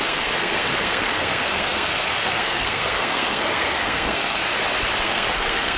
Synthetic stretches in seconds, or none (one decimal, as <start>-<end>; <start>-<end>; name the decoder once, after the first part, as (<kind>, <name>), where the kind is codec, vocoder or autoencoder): 0.0-4.4 (codec, SNAC); 5.0-5.8